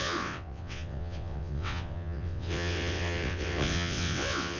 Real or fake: fake